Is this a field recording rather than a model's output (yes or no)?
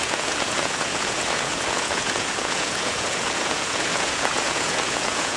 no